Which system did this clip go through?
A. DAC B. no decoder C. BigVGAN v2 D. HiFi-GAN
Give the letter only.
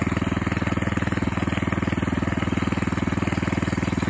B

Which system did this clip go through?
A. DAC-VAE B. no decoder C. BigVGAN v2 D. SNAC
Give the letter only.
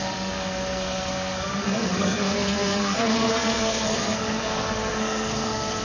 D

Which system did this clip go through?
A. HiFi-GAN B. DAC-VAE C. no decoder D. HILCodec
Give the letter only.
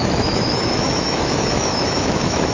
B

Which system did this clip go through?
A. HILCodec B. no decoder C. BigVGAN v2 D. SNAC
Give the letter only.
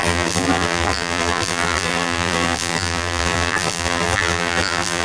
C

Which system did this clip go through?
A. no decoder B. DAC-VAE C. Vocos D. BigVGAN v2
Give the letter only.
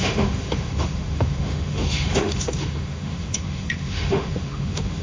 B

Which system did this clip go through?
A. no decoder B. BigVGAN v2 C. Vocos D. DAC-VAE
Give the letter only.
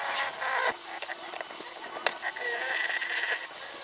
A